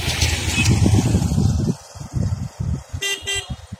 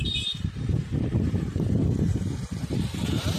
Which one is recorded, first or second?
first